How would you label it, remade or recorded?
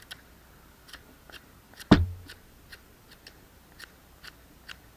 recorded